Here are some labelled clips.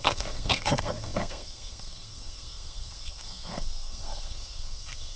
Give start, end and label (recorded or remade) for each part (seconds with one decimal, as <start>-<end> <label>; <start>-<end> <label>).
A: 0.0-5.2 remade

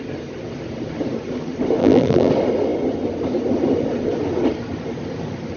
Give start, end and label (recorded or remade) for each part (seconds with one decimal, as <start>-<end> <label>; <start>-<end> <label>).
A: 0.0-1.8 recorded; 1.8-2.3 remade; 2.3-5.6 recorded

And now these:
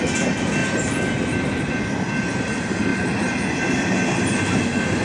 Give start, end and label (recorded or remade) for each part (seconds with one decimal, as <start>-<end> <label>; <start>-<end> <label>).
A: 0.0-5.0 recorded

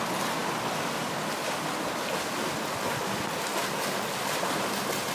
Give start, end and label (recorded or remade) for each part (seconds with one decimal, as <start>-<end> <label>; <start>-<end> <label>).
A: 0.0-5.1 recorded

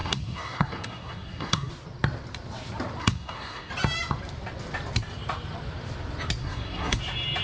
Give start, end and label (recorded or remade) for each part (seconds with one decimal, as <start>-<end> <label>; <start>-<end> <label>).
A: 0.0-1.7 remade; 1.7-3.0 recorded; 3.0-3.7 remade; 3.7-6.4 recorded; 6.4-7.0 remade; 7.0-7.4 recorded

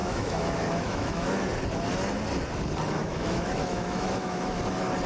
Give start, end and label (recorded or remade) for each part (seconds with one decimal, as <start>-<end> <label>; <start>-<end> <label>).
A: 0.0-1.3 remade; 1.3-3.0 recorded; 3.0-4.6 remade; 4.6-5.1 recorded